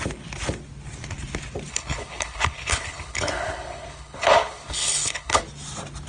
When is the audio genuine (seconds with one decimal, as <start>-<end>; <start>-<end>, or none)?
0.0-1.7; 5.4-6.1